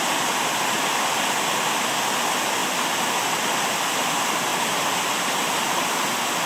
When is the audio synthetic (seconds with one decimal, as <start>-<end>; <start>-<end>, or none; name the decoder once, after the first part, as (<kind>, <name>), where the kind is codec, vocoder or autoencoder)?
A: none